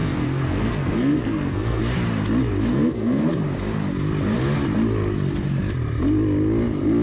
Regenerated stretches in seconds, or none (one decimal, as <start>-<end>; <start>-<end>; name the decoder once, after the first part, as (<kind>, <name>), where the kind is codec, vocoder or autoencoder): 0.0-1.8 (codec, SNAC); 2.7-3.3